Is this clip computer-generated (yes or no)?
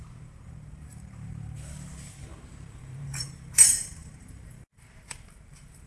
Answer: yes